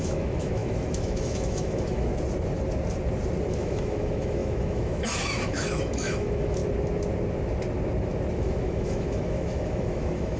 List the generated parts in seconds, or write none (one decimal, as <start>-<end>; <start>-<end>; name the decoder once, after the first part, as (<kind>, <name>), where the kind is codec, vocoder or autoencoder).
0.0-2.1 (autoencoder, DAC-VAE); 3.5-6.6; 8.3-10.4